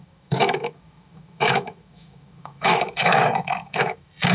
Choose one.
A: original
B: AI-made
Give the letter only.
B